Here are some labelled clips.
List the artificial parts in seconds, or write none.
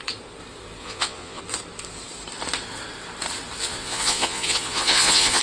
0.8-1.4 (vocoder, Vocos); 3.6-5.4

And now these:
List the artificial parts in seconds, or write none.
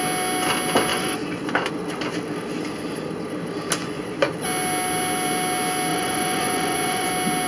0.9-1.7 (vocoder, Vocos); 3.8-4.3; 5.9-7.1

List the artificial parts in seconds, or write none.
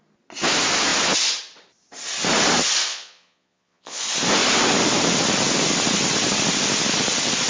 2.9-4.0 (vocoder, Vocos)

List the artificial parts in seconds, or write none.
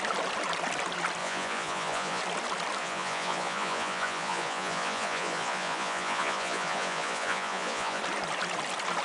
1.2-2.2 (vocoder, Vocos); 2.8-8.0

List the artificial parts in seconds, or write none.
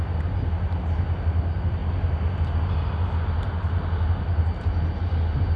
none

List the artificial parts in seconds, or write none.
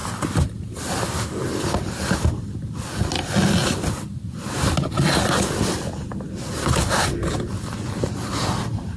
none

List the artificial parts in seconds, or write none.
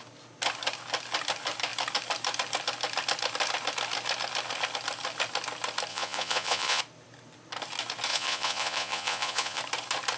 5.9-6.8 (vocoder, Vocos); 8.1-9.6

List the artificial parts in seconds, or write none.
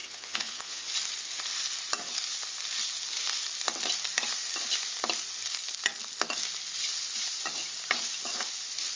0.0-0.8 (vocoder, Vocos)